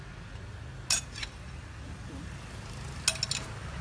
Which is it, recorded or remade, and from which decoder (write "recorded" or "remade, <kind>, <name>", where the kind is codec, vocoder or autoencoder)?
recorded